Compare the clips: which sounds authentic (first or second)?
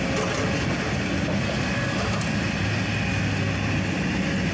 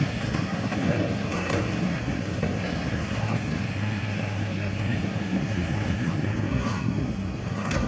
first